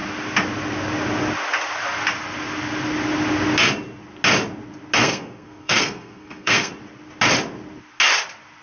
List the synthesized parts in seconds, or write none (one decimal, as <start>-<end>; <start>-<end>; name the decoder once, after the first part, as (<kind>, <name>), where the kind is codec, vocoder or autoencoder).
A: 5.0-6.7 (codec, SNAC)